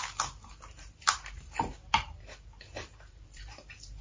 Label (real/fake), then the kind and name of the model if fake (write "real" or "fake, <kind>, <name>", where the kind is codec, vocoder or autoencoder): fake, vocoder, BigVGAN v2